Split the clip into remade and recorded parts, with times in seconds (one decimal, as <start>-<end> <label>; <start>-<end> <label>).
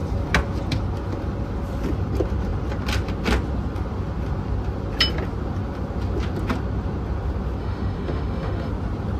0.0-7.6 recorded; 7.6-8.7 remade; 8.7-9.2 recorded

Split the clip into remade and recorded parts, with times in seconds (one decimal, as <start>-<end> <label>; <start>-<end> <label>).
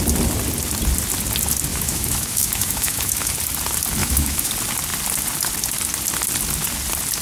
0.0-1.7 recorded; 1.7-3.3 remade; 3.3-4.0 recorded; 4.0-4.5 remade; 4.5-7.2 recorded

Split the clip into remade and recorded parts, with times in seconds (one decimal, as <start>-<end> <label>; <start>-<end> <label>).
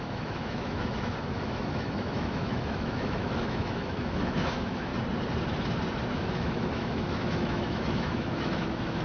0.0-4.9 remade; 4.9-6.1 recorded; 6.1-9.0 remade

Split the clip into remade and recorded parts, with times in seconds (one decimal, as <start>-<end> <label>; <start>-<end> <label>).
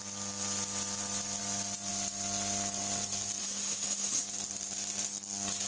0.0-3.4 recorded; 3.4-4.2 remade; 4.2-5.7 recorded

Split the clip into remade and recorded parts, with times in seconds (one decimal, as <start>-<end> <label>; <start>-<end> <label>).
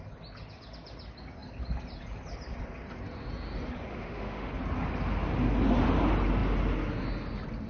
0.0-3.9 recorded; 3.9-4.5 remade; 4.5-7.7 recorded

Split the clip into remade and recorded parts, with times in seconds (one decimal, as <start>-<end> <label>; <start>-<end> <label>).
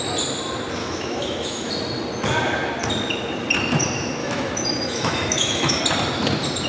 0.0-0.8 recorded; 0.8-1.7 remade; 1.7-4.2 recorded; 4.2-5.8 remade; 5.8-6.7 recorded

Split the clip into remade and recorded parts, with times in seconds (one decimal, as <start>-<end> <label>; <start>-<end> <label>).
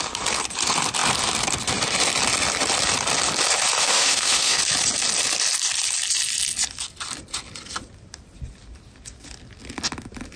0.0-3.8 recorded; 3.8-4.6 remade; 4.6-10.4 recorded